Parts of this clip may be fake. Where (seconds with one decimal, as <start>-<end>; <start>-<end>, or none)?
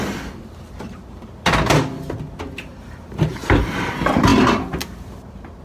2.7-3.9